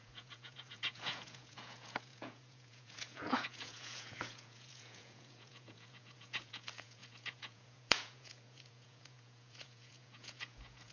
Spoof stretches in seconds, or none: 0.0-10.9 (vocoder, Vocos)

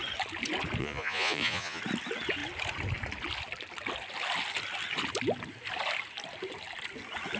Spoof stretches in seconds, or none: 0.8-1.8 (vocoder, Vocos)

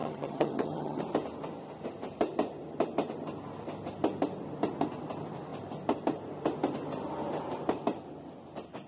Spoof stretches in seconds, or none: 0.0-1.0 (vocoder, HiFi-GAN)

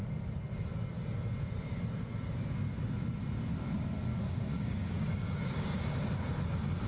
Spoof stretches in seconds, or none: 4.1-5.8 (codec, DAC)

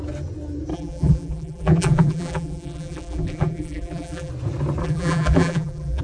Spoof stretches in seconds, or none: 0.7-4.3 (vocoder, BigVGAN v2); 4.8-6.0

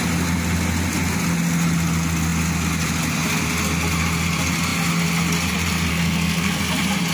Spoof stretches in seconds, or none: 5.9-6.6 (codec, SNAC)